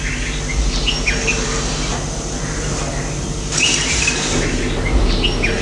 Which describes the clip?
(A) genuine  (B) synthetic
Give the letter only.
A